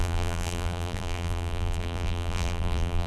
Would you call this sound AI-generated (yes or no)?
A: yes